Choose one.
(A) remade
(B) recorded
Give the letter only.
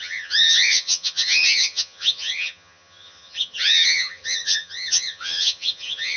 A